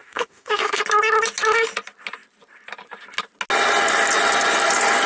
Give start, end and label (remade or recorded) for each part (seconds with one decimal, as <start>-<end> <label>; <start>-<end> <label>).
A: 0.0-0.8 remade; 0.8-5.1 recorded